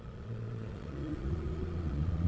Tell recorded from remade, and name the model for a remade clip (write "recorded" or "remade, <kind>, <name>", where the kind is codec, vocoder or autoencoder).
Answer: remade, vocoder, Vocos